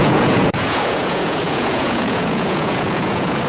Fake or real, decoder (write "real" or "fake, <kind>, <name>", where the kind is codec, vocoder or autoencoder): fake, vocoder, Vocos